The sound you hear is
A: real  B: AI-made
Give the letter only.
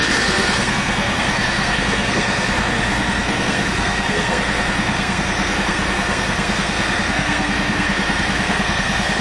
B